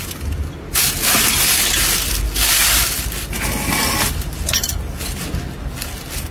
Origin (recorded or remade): recorded